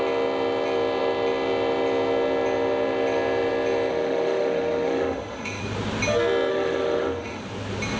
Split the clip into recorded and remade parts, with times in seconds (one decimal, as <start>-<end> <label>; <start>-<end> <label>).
0.0-3.9 recorded; 3.9-5.6 remade; 5.6-6.5 recorded; 6.5-7.4 remade; 7.4-8.0 recorded